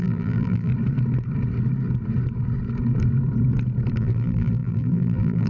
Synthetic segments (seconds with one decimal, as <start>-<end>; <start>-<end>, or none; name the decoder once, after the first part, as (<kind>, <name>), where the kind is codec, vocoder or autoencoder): 0.0-0.7 (vocoder, BigVGAN v2); 4.0-5.5